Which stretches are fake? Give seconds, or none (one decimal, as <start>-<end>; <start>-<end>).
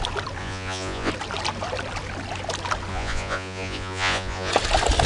0.4-1.1; 2.9-4.5